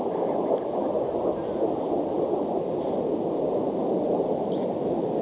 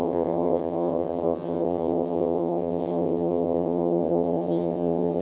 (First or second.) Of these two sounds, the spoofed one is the second